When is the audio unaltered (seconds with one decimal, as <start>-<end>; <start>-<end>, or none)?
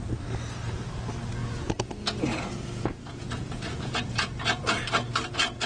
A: 0.0-1.4; 4.6-5.7